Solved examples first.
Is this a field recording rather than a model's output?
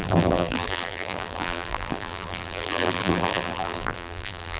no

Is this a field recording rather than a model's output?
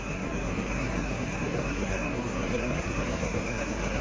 no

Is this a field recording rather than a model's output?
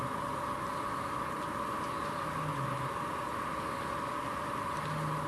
yes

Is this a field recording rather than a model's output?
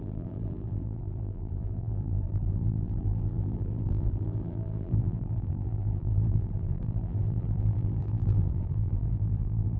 no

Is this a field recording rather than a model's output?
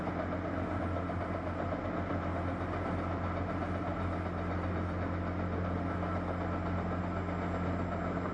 yes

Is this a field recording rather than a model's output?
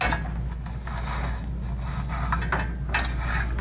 yes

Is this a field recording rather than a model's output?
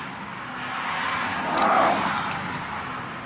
yes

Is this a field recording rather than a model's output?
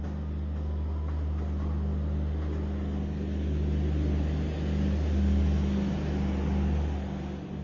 yes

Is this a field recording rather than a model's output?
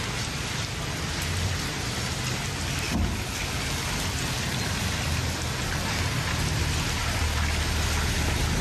yes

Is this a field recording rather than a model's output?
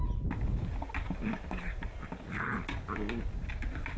yes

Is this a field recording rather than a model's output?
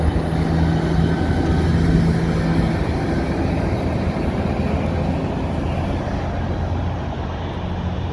yes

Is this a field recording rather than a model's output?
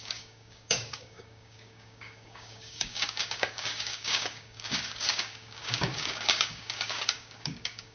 no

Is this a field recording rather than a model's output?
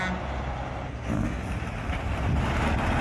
yes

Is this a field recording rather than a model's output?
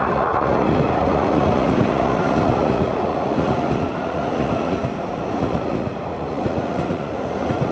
no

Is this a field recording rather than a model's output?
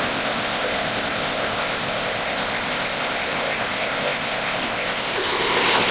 no